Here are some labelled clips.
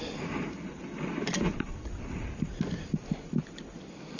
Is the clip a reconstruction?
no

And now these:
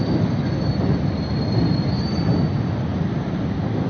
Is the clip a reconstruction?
no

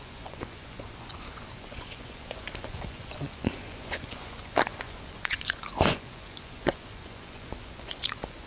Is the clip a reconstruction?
yes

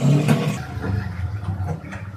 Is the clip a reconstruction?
no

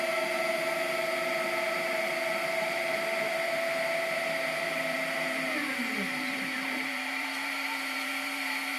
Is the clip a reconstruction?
yes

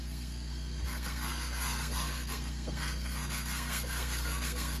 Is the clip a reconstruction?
yes